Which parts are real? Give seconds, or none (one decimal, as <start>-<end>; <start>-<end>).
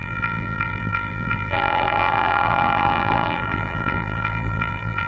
none